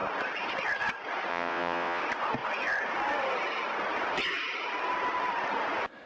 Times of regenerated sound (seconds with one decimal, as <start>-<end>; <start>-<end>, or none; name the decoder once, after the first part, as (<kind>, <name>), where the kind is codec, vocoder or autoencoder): 1.3-2.0 (vocoder, WaveNeXt)